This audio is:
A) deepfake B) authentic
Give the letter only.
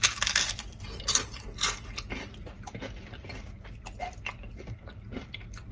B